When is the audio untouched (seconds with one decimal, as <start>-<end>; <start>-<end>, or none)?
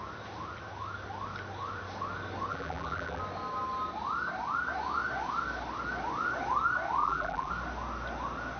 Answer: 0.0-2.5; 3.2-7.0; 7.5-8.6